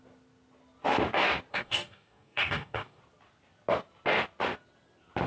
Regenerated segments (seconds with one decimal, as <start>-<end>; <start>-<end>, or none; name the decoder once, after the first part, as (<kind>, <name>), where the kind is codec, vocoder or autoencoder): 1.5-3.0 (codec, DAC)